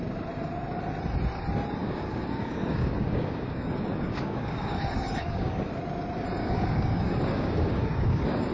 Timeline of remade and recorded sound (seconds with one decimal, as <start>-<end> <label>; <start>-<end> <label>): 0.0-1.8 recorded; 1.8-5.7 remade; 5.7-6.4 recorded; 6.4-8.5 remade